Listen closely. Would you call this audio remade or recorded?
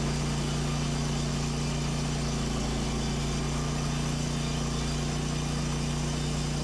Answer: recorded